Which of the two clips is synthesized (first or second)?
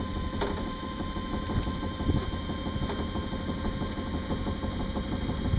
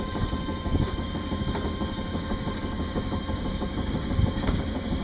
second